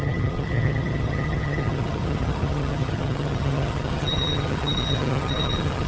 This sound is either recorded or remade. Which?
remade